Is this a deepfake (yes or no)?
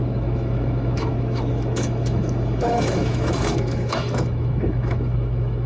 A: yes